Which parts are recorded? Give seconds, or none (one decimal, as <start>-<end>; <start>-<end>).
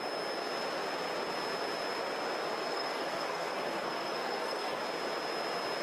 0.0-2.6; 4.8-5.8